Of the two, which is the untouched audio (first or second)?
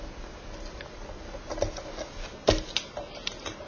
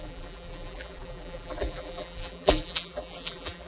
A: first